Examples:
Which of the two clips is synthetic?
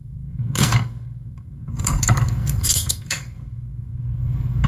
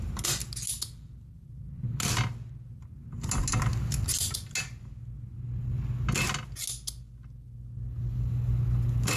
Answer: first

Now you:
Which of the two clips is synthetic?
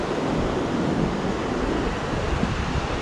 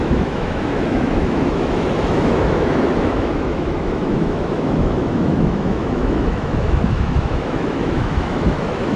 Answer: second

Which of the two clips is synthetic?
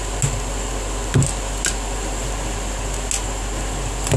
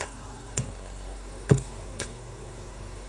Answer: second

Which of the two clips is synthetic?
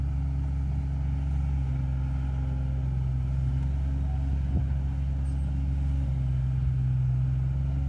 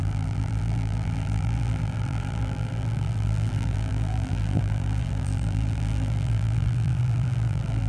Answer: second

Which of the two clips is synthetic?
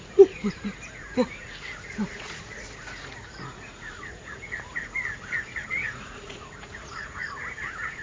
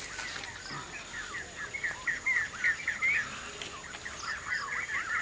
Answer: first